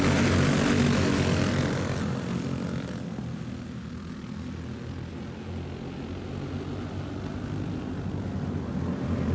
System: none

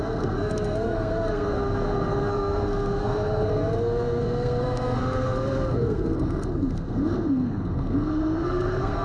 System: codec, SNAC